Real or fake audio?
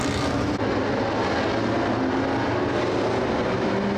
real